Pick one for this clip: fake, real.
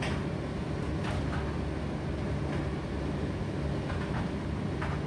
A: real